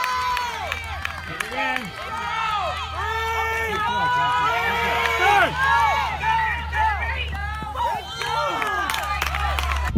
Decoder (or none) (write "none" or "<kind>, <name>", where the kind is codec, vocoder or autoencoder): none